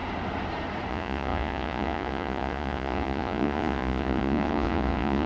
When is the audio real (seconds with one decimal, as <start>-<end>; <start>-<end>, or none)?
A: 0.0-0.9